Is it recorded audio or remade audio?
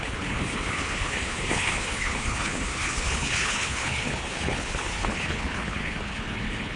remade